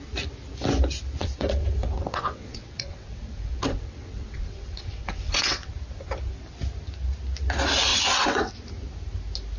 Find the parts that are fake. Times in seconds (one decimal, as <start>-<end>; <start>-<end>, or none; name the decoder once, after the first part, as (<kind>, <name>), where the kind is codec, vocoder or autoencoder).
1.2-5.7 (vocoder, WaveNeXt); 7.9-8.5